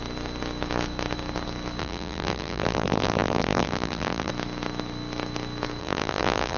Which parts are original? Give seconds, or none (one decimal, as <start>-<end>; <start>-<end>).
0.0-1.8; 4.3-5.8